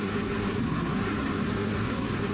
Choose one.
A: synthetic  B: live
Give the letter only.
A